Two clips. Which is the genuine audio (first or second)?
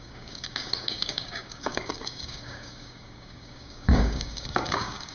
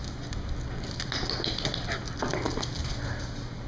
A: second